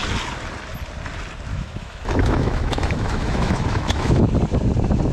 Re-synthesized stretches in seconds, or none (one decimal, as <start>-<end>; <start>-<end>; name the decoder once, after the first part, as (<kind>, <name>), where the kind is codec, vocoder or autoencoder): 1.5-4.1 (autoencoder, DAC-VAE)